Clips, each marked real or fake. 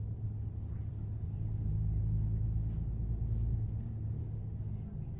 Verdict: real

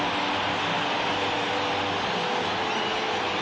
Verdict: real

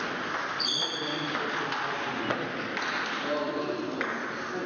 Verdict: real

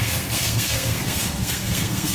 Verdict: fake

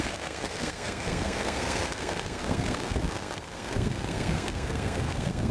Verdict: fake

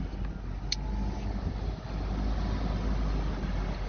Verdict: real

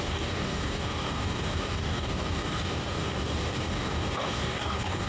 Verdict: fake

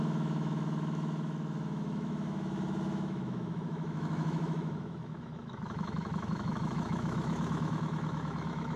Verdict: fake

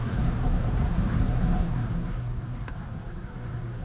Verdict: fake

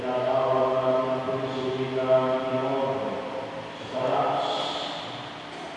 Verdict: real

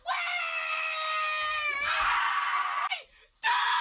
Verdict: real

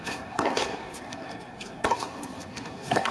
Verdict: fake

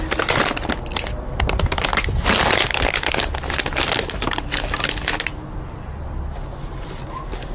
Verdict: real